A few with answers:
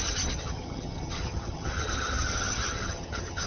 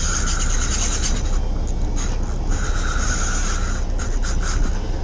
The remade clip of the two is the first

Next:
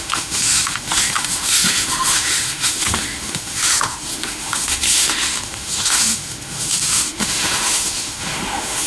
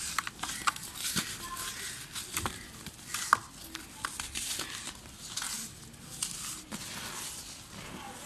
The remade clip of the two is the first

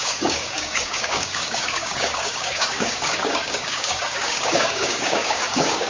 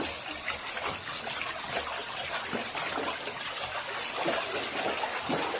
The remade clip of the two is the first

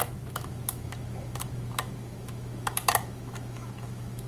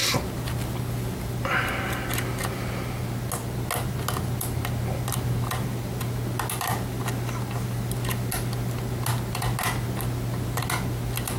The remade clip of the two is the first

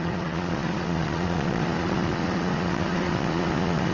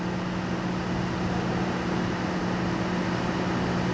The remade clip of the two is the first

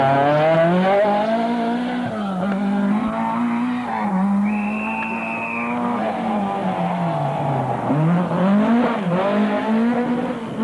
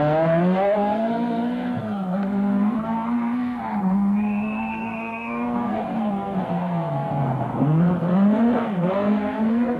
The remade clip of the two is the second